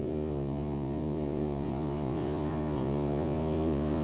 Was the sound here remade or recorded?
remade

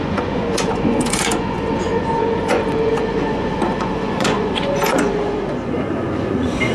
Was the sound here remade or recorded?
remade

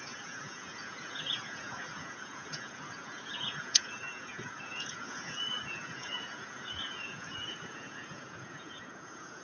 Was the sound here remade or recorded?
remade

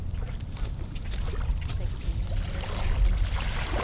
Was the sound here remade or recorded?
recorded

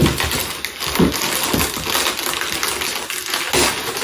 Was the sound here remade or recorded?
recorded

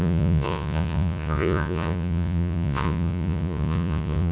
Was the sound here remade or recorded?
remade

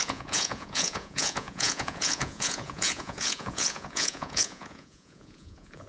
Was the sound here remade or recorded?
remade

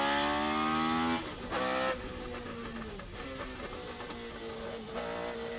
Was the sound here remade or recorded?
recorded